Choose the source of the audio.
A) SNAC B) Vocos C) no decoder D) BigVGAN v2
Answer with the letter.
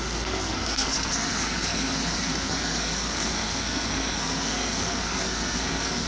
A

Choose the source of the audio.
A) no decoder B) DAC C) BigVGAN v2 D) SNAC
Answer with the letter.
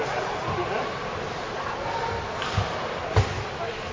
A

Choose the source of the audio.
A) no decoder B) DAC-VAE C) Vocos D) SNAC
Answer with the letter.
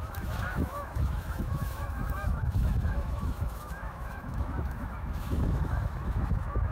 B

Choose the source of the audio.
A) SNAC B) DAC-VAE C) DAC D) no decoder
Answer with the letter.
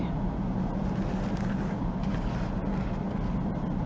D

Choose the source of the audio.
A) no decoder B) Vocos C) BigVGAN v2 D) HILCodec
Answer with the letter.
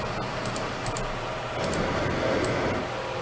A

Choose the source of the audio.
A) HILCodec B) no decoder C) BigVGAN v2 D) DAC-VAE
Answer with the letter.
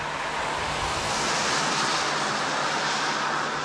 B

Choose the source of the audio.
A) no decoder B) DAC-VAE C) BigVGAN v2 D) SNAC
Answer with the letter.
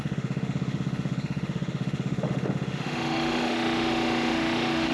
B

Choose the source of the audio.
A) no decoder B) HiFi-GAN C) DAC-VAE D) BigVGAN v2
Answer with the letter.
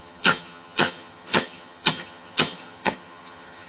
B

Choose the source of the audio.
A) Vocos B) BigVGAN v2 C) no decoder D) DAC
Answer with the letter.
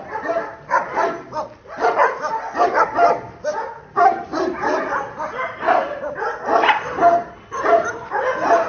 C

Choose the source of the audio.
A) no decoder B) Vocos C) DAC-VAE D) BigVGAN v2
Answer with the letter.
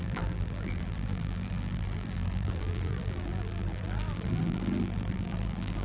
D